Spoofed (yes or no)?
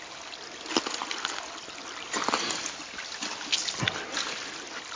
no